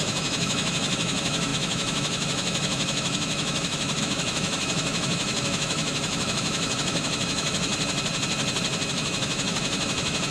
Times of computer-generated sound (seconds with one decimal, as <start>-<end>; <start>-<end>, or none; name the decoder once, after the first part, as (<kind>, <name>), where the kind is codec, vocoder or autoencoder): 0.0-7.7 (autoencoder, DAC-VAE); 8.9-10.3